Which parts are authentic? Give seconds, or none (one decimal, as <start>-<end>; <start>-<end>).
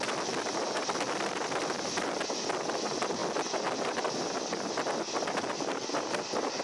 0.0-6.6